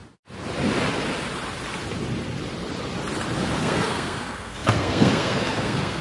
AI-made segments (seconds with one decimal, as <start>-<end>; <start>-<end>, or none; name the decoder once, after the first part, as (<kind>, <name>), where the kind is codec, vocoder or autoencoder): 3.6-6.0 (codec, SNAC)